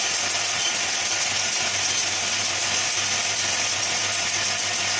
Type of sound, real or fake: real